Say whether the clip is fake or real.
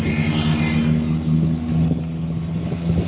real